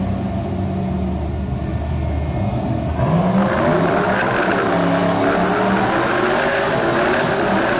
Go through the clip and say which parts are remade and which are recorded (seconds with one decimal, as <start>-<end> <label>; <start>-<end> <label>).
0.0-7.8 recorded